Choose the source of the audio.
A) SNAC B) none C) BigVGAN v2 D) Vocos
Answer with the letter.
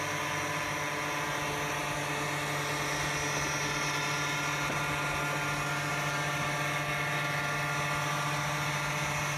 B